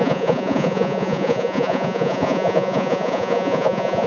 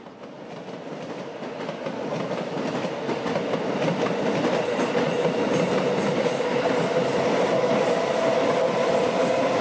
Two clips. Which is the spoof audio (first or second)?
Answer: first